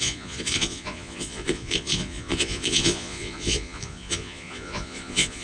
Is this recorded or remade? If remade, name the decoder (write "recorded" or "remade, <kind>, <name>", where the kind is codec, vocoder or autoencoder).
remade, vocoder, Vocos